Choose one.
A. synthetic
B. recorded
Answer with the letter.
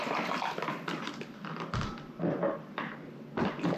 B